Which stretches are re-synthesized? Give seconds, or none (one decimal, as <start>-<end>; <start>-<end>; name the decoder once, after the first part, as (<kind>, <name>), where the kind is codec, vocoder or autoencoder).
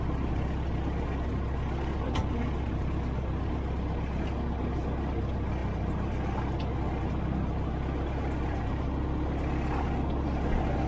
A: none